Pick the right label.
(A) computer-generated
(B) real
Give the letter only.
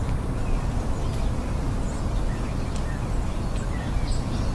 B